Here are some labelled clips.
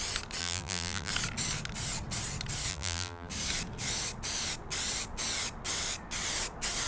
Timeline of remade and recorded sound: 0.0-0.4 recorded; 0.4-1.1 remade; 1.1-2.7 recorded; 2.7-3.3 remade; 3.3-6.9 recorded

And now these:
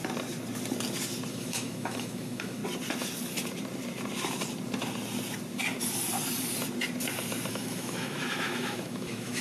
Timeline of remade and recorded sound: 0.0-1.3 recorded; 1.3-2.6 remade; 2.6-7.5 recorded; 7.5-9.4 remade

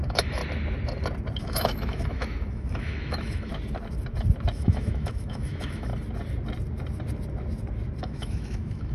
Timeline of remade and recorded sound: 0.0-0.4 remade; 0.4-1.4 recorded; 1.4-3.5 remade; 3.5-4.5 recorded; 4.5-5.9 remade; 5.9-8.0 recorded; 8.0-8.9 remade

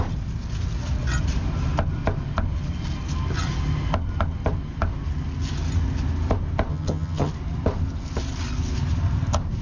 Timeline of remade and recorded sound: 0.0-6.7 recorded; 6.7-7.3 remade; 7.3-9.6 recorded

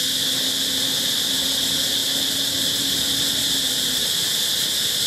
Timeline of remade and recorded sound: 0.0-5.1 recorded

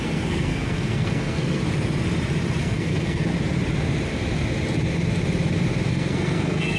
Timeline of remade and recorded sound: 0.0-1.6 remade; 1.6-2.6 recorded; 2.6-3.3 remade; 3.3-5.9 recorded; 5.9-6.8 remade